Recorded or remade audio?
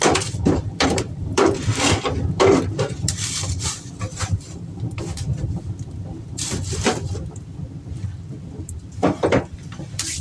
remade